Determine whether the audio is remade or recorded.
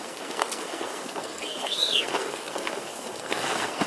remade